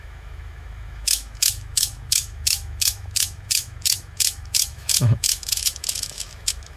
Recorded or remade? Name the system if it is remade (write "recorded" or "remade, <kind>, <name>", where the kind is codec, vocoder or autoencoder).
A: remade, autoencoder, DAC-VAE